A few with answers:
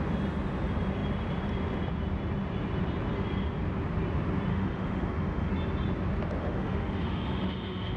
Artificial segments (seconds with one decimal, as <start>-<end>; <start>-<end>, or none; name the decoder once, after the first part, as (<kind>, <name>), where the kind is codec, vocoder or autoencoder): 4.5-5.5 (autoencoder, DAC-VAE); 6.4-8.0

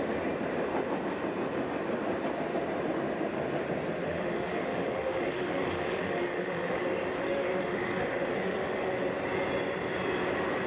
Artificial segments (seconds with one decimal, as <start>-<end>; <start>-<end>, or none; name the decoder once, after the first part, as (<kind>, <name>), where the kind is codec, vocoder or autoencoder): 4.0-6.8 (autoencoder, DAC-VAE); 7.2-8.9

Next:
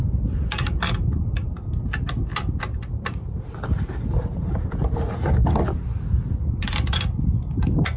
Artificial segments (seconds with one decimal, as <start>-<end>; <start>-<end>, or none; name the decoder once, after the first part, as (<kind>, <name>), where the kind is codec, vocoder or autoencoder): none